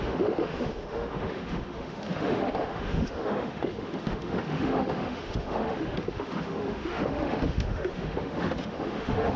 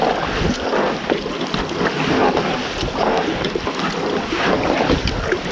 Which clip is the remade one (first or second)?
first